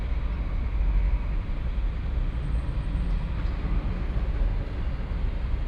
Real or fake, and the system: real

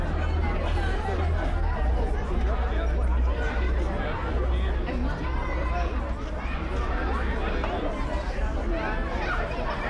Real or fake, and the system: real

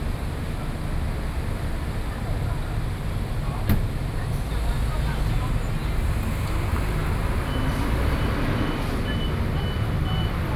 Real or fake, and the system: real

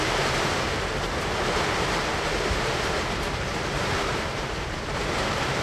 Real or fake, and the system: fake, vocoder, BigVGAN v2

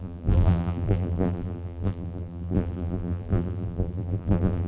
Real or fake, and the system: fake, vocoder, BigVGAN v2